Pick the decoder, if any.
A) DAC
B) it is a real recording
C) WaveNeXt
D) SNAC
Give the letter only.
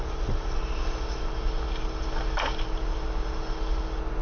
B